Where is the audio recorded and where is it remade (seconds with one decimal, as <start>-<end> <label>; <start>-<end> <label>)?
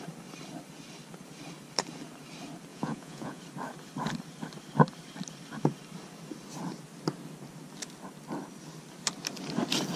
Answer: 0.0-2.7 recorded; 2.7-3.4 remade; 3.4-10.0 recorded